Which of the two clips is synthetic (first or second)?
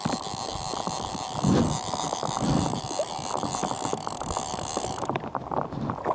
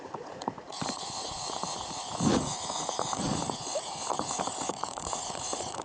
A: second